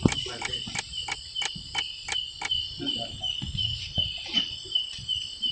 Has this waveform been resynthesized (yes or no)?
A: no